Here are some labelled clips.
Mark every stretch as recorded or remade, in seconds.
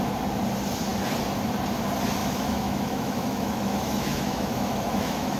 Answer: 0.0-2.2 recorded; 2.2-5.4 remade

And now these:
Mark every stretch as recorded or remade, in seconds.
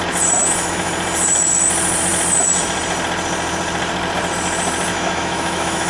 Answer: 0.0-0.4 recorded; 0.4-0.9 remade; 0.9-4.9 recorded; 4.9-5.9 remade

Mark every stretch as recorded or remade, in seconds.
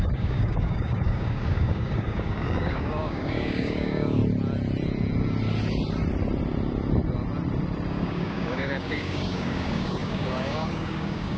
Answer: 0.0-4.2 remade; 4.2-7.9 recorded; 7.9-11.4 remade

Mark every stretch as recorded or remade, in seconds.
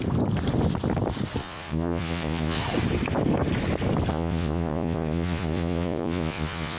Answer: 0.0-1.4 recorded; 1.4-2.6 remade; 2.6-4.1 recorded; 4.1-6.8 remade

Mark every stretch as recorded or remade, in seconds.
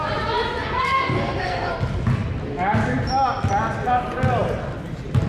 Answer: 0.0-0.6 recorded; 0.6-1.7 remade; 1.7-5.3 recorded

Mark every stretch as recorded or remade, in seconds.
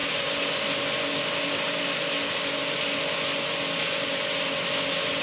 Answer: 0.0-5.2 recorded